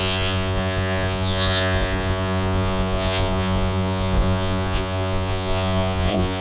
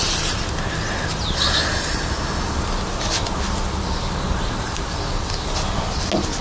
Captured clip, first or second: second